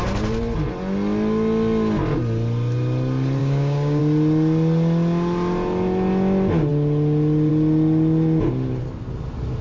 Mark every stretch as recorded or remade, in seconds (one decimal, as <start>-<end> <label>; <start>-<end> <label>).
0.0-3.4 recorded; 3.4-4.0 remade; 4.0-9.6 recorded